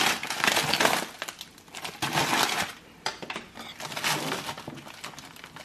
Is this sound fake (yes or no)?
no